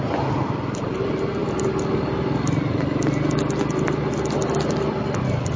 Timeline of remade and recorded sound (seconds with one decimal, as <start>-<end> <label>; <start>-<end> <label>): 0.0-5.6 recorded